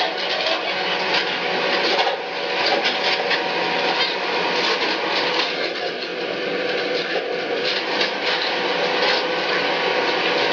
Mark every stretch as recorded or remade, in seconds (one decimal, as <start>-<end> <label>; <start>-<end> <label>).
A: 0.0-10.5 recorded